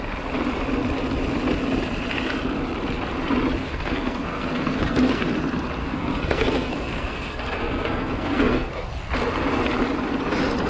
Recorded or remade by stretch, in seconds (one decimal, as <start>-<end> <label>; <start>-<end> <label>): 0.0-3.6 recorded; 3.6-5.2 remade; 5.2-5.8 recorded; 5.8-8.9 remade; 8.9-10.7 recorded